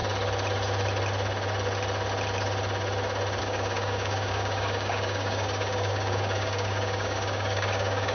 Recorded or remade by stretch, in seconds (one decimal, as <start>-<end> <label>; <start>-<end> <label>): 0.0-3.4 recorded; 3.4-8.1 remade